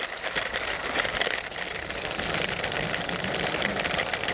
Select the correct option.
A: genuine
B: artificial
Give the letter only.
A